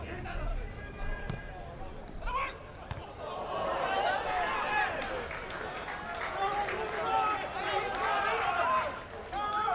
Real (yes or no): yes